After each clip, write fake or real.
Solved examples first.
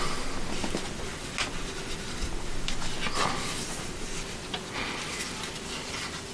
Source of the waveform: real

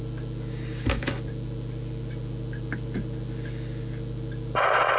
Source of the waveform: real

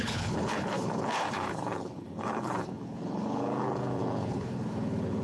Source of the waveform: fake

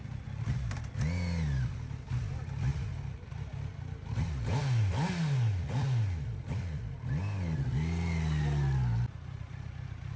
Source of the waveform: real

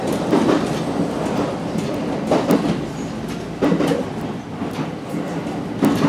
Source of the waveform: real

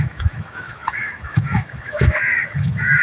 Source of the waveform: fake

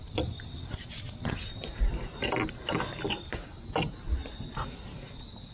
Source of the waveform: real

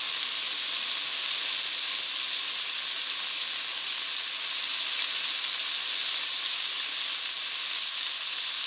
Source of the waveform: real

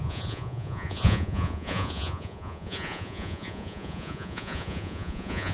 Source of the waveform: fake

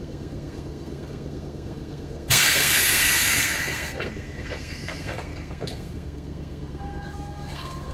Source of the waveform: fake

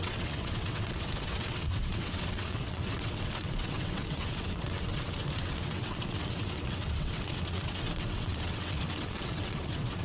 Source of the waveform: fake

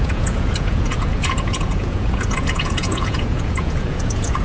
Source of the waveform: fake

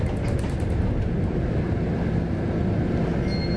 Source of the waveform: real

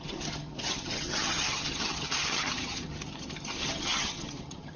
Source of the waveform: fake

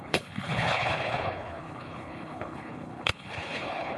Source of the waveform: fake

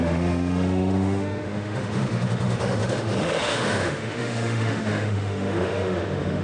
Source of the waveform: fake